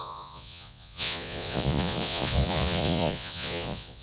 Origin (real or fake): fake